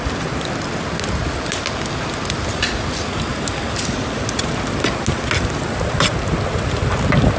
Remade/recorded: recorded